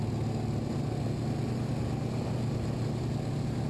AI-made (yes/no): no